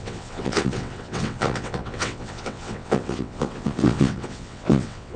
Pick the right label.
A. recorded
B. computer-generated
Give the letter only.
B